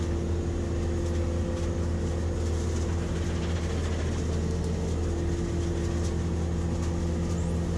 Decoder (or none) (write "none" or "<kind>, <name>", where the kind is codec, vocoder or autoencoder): none